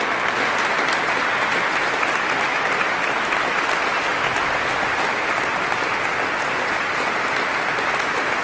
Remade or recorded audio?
recorded